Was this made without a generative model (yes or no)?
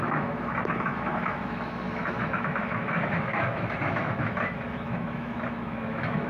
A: no